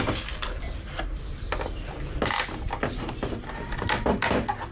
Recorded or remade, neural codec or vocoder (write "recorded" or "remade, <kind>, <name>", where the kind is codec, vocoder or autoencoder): recorded